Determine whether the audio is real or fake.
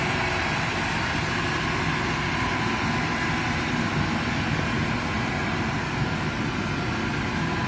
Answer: real